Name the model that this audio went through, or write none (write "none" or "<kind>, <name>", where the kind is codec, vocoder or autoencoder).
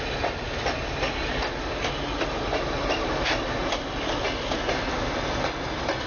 none